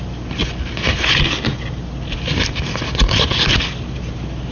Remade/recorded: recorded